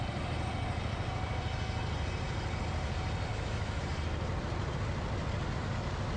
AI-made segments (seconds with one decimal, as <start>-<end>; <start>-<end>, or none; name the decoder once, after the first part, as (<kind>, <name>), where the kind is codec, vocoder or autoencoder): 3.3-3.8 (autoencoder, DAC-VAE)